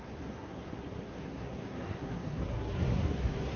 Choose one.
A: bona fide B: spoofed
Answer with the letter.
B